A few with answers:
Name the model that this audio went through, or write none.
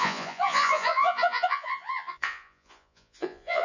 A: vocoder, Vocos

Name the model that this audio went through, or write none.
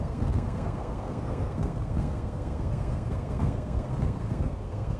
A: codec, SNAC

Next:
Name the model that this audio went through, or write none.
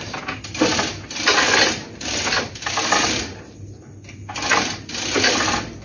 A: none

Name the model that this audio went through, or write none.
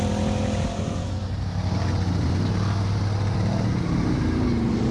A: none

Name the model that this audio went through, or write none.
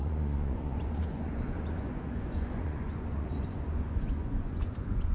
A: vocoder, Vocos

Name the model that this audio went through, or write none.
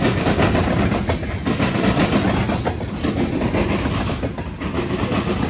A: none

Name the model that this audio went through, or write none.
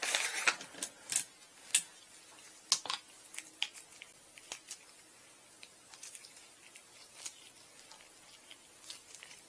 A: none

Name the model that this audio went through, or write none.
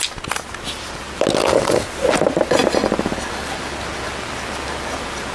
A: none